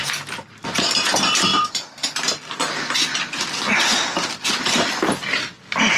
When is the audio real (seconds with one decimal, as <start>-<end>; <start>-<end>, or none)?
0.0-6.0